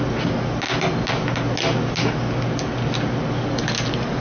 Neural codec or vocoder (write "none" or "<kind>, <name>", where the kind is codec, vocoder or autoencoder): none